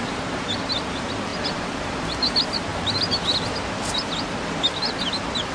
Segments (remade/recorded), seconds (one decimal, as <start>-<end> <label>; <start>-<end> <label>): 0.0-5.5 recorded